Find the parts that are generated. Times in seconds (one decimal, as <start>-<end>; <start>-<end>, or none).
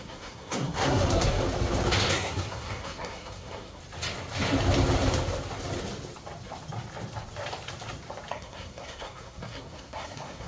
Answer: 0.0-1.4; 2.1-3.8; 8.3-10.5